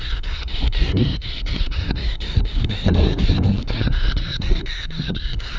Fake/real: fake